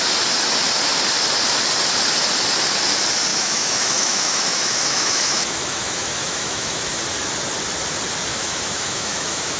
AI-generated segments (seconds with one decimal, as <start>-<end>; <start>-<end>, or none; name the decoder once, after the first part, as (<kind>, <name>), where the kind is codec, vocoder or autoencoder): 3.3-7.0 (autoencoder, DAC-VAE); 8.3-9.6